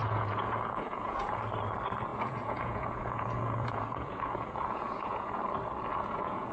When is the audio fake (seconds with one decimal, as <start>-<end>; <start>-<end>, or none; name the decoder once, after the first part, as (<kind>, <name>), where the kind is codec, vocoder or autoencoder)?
0.0-1.4 (vocoder, Vocos); 2.1-5.4; 5.9-6.5